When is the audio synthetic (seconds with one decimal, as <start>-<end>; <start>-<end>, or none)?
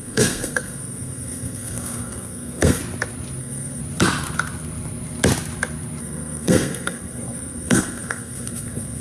0.0-2.8; 3.4-3.8; 6.0-9.0